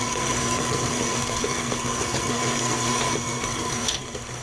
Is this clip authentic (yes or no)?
no